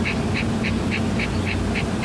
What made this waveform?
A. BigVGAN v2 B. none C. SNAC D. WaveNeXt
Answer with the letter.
B